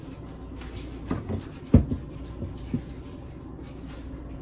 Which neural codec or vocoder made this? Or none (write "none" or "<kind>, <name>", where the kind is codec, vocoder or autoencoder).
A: none